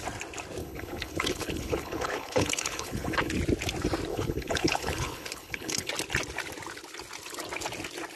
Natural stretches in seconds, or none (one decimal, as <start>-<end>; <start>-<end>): 0.0-0.6; 3.3-4.1; 5.9-8.2